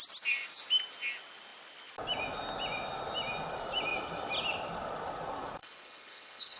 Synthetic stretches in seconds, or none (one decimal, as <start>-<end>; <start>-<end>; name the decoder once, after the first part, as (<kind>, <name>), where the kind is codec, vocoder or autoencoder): 5.6-6.6 (codec, HILCodec)